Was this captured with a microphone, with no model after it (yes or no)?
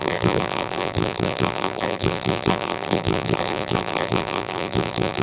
no